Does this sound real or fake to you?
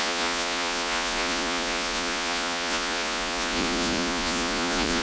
fake